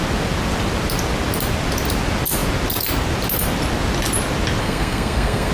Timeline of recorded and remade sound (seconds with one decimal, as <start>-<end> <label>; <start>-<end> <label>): 0.0-4.6 recorded; 4.6-5.5 remade